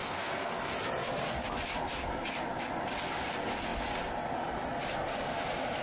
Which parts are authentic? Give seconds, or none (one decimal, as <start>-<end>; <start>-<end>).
0.5-5.8